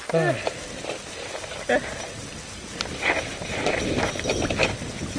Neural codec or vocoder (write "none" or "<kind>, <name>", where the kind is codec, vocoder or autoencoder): none